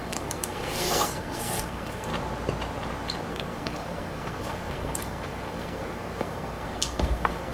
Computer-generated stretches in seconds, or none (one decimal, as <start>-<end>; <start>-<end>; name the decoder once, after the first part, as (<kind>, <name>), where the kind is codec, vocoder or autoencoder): 0.0-2.1 (codec, SNAC); 3.3-7.5

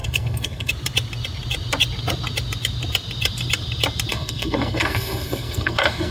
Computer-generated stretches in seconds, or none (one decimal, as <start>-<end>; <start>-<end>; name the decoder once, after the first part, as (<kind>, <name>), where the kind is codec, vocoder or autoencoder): 0.0-0.7 (codec, SNAC); 4.1-6.1

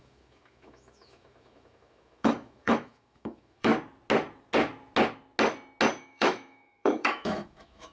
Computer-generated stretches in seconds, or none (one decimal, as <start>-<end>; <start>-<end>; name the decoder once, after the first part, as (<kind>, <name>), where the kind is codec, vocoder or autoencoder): 0.0-3.7 (autoencoder, DAC-VAE); 6.0-7.9

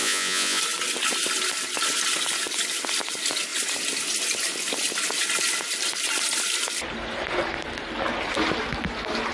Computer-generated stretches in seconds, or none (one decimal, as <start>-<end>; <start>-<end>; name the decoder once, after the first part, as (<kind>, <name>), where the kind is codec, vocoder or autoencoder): 0.0-0.6 (vocoder, Vocos)